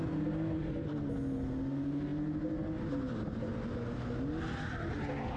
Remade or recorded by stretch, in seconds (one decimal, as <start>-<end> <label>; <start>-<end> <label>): 0.0-5.4 recorded